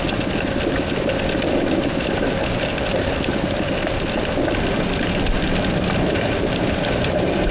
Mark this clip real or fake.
real